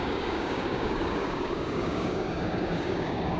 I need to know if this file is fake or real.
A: fake